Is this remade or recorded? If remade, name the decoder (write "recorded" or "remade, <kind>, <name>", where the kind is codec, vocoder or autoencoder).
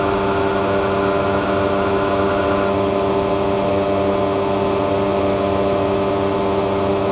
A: recorded